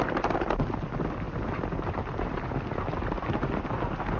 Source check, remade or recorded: recorded